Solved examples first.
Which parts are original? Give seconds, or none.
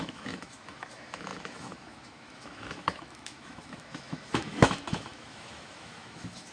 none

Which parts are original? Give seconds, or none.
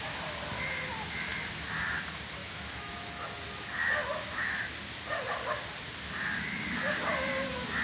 0.0-2.4; 2.9-4.0; 4.7-7.8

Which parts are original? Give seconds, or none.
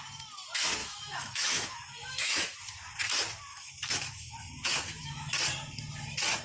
0.0-0.8; 2.6-3.5; 5.3-6.4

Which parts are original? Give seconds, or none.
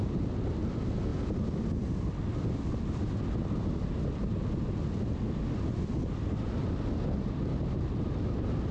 0.0-8.7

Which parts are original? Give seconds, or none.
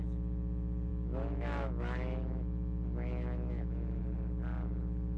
0.0-0.9; 4.0-5.2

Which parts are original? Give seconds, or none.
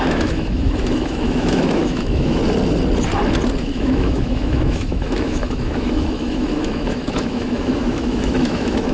2.4-3.6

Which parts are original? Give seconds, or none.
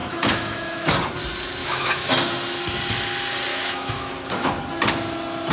0.9-1.6; 2.1-3.5; 4.1-5.5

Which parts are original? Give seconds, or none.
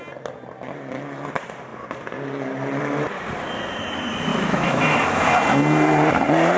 0.0-4.3; 5.3-6.6